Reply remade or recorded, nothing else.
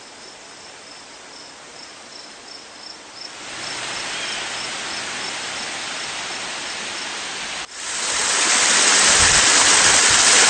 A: recorded